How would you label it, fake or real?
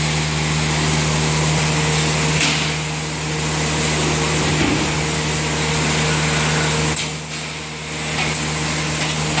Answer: real